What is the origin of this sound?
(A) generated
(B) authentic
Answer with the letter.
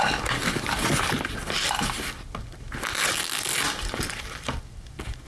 B